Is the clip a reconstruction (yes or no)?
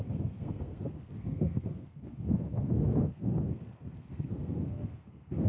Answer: yes